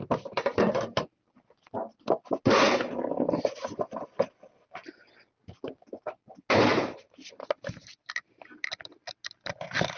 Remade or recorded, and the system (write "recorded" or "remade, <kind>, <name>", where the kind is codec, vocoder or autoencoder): recorded